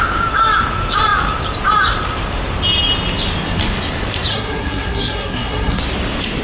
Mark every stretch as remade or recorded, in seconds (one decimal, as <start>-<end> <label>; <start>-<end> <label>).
0.0-4.3 recorded; 4.3-5.8 remade; 5.8-6.4 recorded